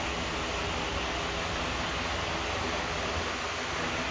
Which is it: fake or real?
real